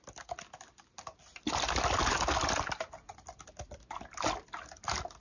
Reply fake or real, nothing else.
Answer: real